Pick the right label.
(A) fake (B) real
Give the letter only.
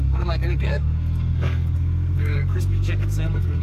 A